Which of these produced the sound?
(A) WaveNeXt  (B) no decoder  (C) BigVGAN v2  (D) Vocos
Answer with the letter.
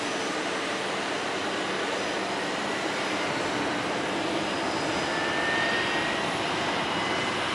B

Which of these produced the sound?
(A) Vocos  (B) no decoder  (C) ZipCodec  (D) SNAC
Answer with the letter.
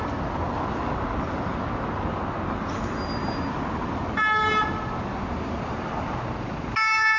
B